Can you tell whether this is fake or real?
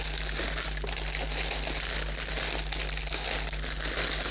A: real